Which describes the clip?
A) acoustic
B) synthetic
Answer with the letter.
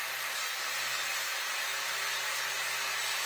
A